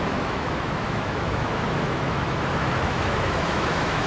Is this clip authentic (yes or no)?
no